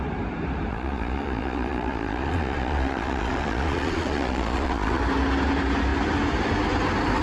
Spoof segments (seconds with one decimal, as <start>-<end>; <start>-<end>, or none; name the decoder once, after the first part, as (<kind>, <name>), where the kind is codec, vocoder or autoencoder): 0.7-5.0 (vocoder, Vocos)